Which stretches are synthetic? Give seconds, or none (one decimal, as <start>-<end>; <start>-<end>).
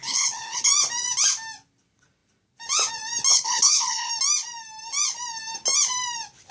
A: 0.0-0.7; 3.3-4.1